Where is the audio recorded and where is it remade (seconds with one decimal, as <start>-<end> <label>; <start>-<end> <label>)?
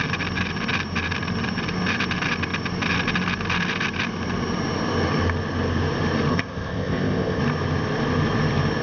0.0-6.3 recorded; 6.3-7.4 remade; 7.4-8.8 recorded